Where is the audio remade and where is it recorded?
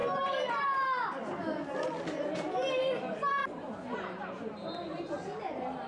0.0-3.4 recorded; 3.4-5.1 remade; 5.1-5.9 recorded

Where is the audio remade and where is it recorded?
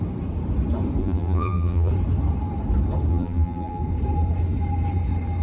0.0-1.0 recorded; 1.0-1.9 remade; 1.9-3.1 recorded; 3.1-3.8 remade; 3.8-5.4 recorded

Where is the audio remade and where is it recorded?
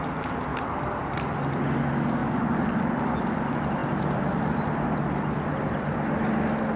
0.0-0.5 recorded; 0.5-1.6 remade; 1.6-2.2 recorded; 2.2-3.2 remade; 3.2-3.8 recorded; 3.8-5.4 remade; 5.4-6.8 recorded